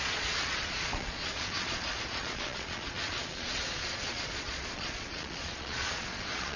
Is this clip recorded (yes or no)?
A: no